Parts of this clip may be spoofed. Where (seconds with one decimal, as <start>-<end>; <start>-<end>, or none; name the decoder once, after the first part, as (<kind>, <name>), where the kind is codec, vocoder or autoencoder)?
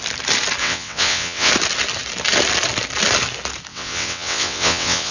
0.6-1.5 (vocoder, WaveNeXt); 3.7-5.1